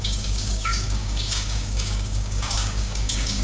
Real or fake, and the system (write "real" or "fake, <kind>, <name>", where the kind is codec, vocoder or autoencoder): fake, codec, DAC